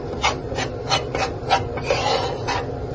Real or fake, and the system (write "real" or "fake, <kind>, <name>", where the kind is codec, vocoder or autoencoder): real